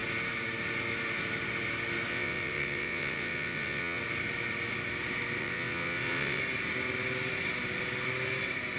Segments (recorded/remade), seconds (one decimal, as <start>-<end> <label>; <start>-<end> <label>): 0.0-2.1 recorded; 2.1-4.0 remade; 4.0-5.4 recorded; 5.4-6.4 remade; 6.4-8.8 recorded